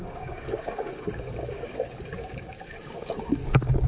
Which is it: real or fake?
fake